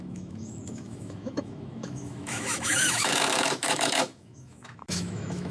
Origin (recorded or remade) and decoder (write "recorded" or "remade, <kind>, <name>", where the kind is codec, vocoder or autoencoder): remade, autoencoder, DAC-VAE